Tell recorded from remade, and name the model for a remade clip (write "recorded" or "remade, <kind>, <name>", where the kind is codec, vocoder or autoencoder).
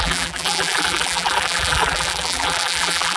remade, vocoder, BigVGAN v2